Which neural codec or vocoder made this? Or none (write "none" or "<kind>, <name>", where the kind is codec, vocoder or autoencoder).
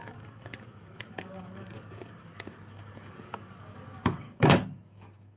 codec, DAC